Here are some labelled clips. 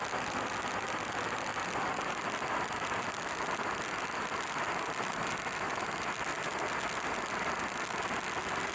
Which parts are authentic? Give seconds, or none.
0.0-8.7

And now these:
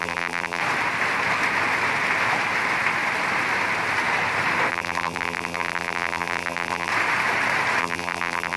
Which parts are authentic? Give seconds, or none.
0.6-4.7; 6.9-7.8

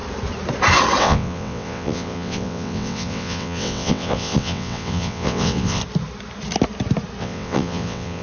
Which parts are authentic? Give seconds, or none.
0.0-1.0; 5.8-7.2

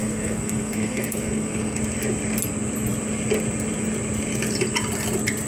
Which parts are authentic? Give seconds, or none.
1.8-5.5

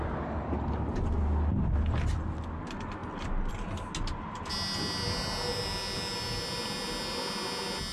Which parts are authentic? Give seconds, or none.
0.0-7.9

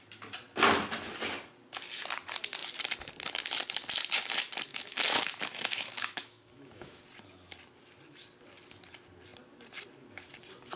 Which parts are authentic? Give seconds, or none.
0.0-4.7; 7.0-10.8